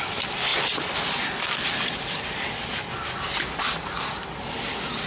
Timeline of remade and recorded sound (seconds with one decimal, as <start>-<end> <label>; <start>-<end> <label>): 0.0-5.1 recorded

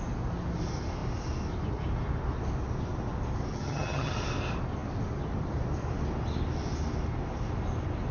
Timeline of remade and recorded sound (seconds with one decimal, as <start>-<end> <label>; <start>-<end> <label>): 0.0-3.5 recorded; 3.5-4.1 remade; 4.1-8.1 recorded

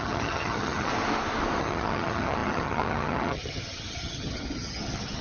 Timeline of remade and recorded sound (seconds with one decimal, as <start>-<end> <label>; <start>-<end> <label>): 0.0-0.9 remade; 0.9-1.6 recorded; 1.6-5.2 remade